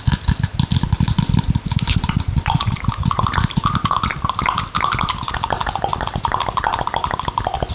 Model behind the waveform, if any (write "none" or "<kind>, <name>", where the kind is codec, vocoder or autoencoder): none